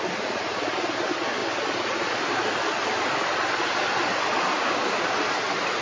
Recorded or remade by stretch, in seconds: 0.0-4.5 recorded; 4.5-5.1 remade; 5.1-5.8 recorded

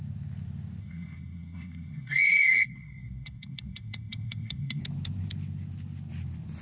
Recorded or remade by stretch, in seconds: 0.0-0.8 recorded; 0.8-4.8 remade; 4.8-6.6 recorded

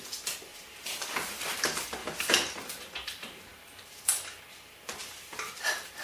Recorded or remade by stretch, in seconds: 0.0-0.5 remade; 0.5-1.5 recorded; 1.5-6.0 remade